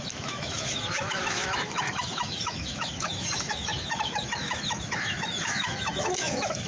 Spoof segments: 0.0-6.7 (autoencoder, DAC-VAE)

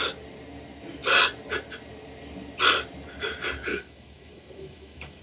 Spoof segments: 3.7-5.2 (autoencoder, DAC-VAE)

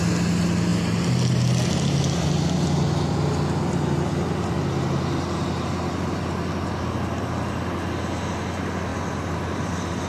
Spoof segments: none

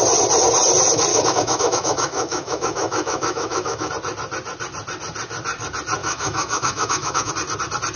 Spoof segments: 1.1-3.9 (autoencoder, DAC-VAE); 6.0-7.3

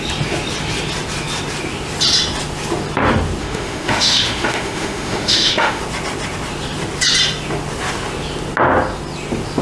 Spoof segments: 3.4-5.8 (autoencoder, DAC-VAE)

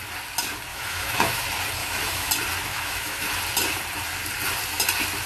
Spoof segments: 0.7-1.4 (autoencoder, DAC-VAE); 1.8-2.3; 2.7-3.4

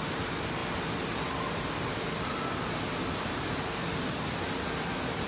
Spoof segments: none